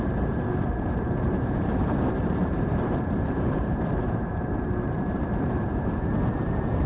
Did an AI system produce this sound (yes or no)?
yes